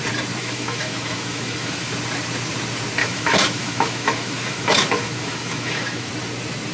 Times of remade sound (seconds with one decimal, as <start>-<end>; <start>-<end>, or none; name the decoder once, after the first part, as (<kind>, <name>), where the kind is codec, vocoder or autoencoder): 0.4-1.9 (autoencoder, DAC-VAE); 3.0-6.1